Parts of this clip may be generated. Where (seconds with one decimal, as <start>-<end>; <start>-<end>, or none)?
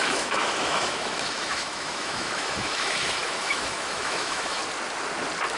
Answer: 0.0-4.6